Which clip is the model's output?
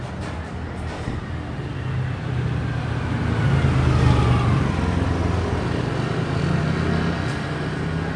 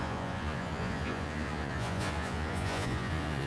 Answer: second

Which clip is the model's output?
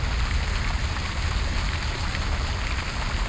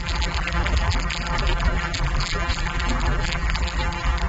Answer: second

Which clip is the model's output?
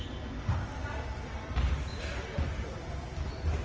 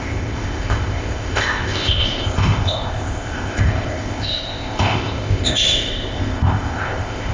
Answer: second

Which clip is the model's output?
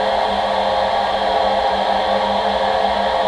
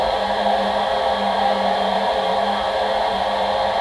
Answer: second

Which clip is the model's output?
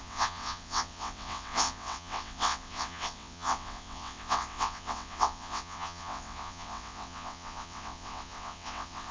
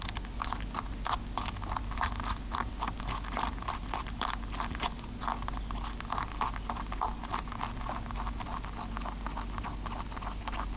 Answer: first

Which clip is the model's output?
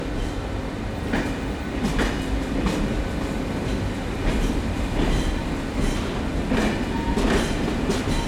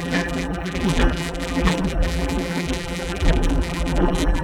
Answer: second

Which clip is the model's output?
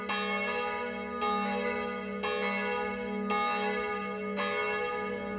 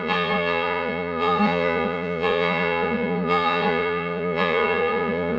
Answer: second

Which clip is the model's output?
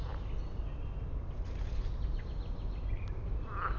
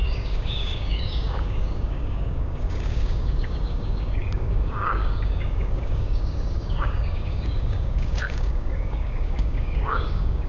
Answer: second